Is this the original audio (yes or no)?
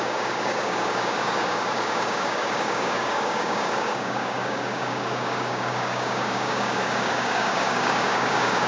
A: no